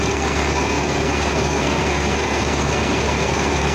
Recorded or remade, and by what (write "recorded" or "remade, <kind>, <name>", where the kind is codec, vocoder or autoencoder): remade, codec, SNAC